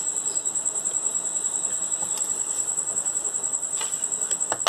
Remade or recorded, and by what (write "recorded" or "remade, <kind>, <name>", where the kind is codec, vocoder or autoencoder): recorded